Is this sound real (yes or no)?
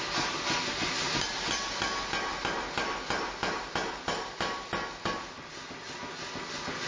yes